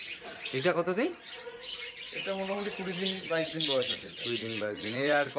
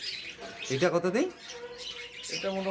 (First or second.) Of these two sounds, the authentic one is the second